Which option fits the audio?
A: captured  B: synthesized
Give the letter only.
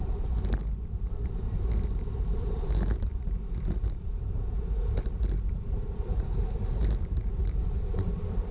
B